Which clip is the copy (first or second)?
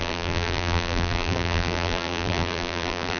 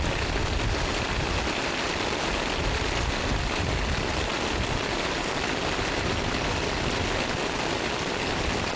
first